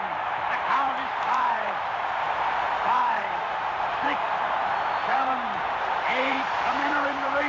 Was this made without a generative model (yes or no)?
no